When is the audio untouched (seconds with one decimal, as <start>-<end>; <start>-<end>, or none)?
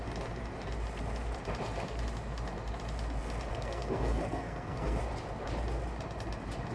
0.0-3.5; 5.0-6.7